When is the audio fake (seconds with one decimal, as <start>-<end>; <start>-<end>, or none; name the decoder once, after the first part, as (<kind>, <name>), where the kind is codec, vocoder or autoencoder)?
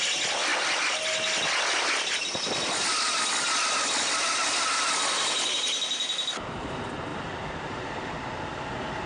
none